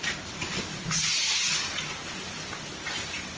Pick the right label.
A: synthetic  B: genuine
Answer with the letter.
B